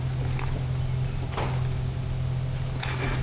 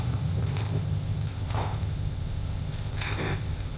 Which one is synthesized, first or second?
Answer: second